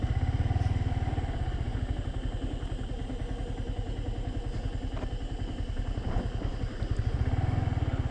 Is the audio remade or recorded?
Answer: recorded